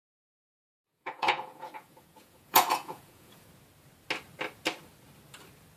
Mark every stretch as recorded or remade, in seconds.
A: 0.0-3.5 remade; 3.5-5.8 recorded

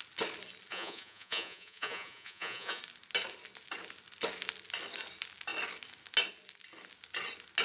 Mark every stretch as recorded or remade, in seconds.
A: 0.0-0.7 recorded; 0.7-2.8 remade; 2.8-7.6 recorded

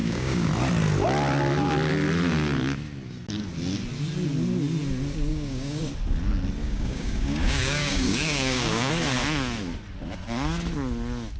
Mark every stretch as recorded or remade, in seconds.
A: 0.0-0.5 remade; 0.5-5.3 recorded; 5.3-5.8 remade; 5.8-6.6 recorded; 6.6-8.9 remade; 8.9-11.4 recorded

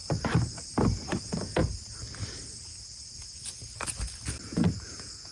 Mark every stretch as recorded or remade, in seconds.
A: 0.0-1.2 recorded; 1.2-1.6 remade; 1.6-4.8 recorded; 4.8-5.3 remade

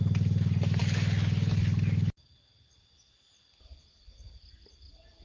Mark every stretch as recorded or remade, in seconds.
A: 0.0-5.2 recorded

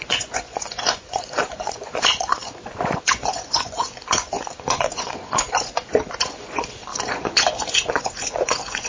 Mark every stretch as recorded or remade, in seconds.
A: 0.0-8.9 remade

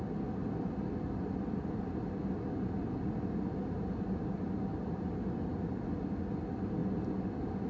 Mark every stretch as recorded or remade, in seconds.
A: 0.0-7.7 recorded

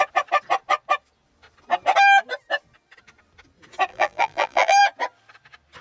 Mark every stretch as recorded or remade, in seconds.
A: 0.0-3.9 recorded; 3.9-4.8 remade; 4.8-5.8 recorded